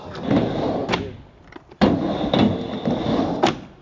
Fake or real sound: real